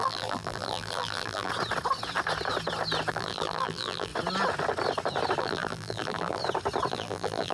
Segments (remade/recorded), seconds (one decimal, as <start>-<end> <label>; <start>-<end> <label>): 0.0-1.5 remade; 1.5-3.1 recorded; 3.1-4.1 remade; 4.1-5.4 recorded; 5.4-6.4 remade; 6.4-6.9 recorded; 6.9-7.5 remade